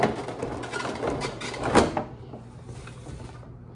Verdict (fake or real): real